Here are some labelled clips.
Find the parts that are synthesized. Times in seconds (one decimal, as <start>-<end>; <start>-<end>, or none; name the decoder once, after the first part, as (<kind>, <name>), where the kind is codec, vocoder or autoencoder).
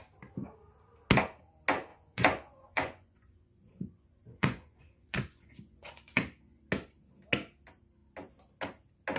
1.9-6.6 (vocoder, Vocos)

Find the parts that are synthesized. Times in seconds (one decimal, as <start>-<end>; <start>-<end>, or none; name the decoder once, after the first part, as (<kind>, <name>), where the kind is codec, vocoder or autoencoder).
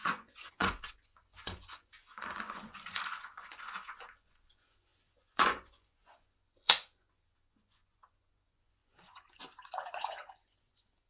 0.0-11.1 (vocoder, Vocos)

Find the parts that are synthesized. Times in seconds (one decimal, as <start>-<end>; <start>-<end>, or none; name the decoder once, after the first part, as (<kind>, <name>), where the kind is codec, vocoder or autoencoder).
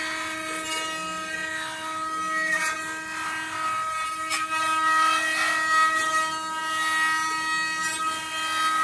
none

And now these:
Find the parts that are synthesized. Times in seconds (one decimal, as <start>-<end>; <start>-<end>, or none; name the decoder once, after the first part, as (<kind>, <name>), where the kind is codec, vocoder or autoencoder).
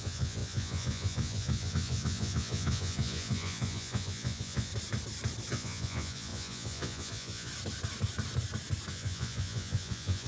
0.0-4.7 (vocoder, Vocos); 5.5-7.5; 8.9-10.3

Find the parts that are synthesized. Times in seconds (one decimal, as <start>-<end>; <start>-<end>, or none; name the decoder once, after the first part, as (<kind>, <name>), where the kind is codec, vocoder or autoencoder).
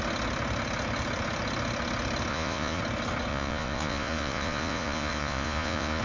2.3-2.8 (vocoder, Vocos); 3.3-6.0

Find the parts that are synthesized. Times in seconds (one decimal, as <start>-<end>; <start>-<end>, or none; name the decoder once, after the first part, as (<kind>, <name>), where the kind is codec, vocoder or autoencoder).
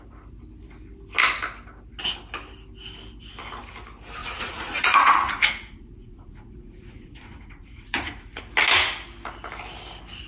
4.2-8.4 (vocoder, Vocos)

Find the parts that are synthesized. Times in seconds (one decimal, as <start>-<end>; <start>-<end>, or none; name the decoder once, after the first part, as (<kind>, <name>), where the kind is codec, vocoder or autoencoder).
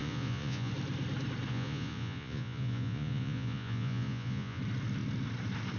0.0-0.7 (vocoder, Vocos); 1.5-4.6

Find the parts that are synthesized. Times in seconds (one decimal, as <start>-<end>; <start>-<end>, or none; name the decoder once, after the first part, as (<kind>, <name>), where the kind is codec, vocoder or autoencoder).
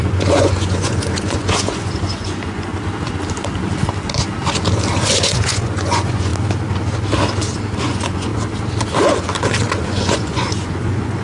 0.0-2.7 (vocoder, Vocos); 5.1-6.3; 7.8-8.3; 9.8-11.2